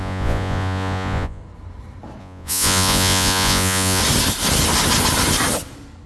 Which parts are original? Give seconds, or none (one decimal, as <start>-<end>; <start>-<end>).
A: 1.4-2.2; 4.0-6.1